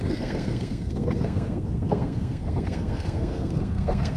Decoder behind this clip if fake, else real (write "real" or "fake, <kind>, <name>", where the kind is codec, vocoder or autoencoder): fake, codec, SNAC